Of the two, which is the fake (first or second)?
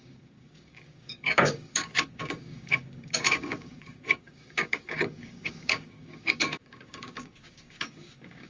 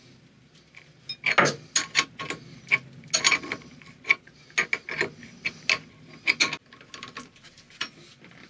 first